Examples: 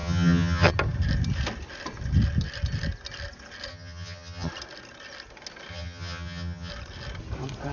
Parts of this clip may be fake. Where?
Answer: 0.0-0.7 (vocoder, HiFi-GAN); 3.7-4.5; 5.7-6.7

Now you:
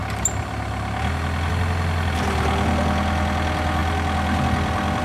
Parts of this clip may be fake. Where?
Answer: none

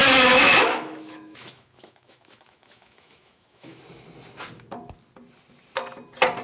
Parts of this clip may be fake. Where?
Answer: 0.0-3.8 (autoencoder, DAC-VAE)

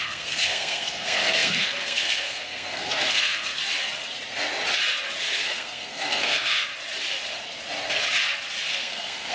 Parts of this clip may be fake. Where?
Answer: 0.0-3.6 (codec, SNAC); 5.2-6.7; 8.7-9.3

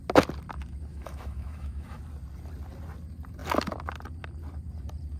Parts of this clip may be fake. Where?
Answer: 0.9-2.0 (autoencoder, DAC-VAE)

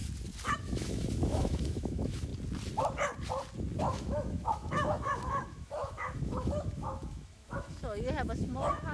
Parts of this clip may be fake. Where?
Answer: 0.5-2.3 (autoencoder, DAC-VAE); 3.8-8.9